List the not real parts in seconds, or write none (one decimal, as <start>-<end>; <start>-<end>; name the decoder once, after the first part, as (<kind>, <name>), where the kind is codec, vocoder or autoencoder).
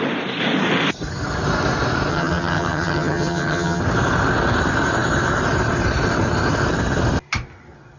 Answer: 2.1-3.8 (vocoder, HiFi-GAN)